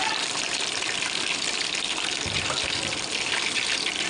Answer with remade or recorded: remade